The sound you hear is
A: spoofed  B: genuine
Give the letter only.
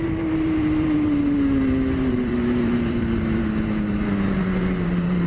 A